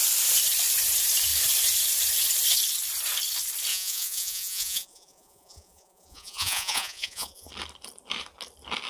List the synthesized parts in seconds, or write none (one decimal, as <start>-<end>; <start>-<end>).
3.7-7.5